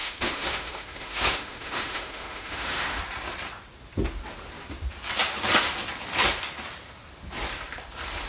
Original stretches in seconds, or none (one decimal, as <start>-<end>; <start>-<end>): 3.0-8.3